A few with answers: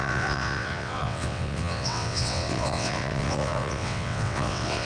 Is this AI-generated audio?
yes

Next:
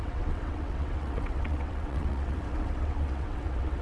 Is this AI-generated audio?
yes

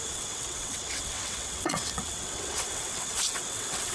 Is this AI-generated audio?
yes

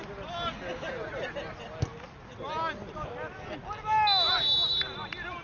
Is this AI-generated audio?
no